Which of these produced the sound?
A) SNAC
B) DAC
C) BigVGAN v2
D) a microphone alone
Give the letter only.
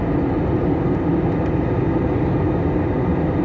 D